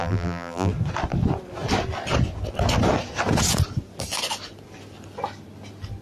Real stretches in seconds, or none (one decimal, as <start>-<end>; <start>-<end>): 0.7-6.0